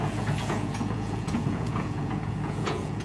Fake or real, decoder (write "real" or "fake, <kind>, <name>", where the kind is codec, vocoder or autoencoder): fake, vocoder, Vocos